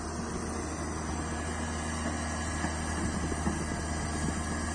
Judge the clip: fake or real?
real